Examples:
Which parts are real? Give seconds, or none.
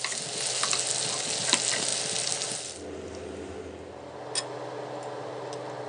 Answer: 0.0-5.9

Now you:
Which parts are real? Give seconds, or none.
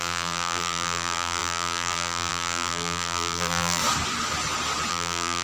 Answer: 3.8-4.9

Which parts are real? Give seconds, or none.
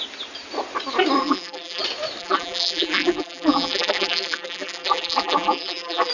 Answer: 0.0-1.2; 1.8-2.2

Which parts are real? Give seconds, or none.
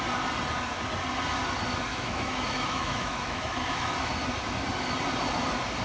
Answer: 0.0-1.9; 4.1-5.8